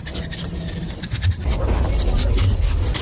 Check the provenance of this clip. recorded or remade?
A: recorded